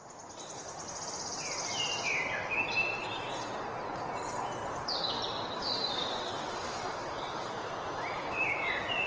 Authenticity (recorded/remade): recorded